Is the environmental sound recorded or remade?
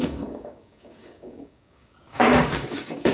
remade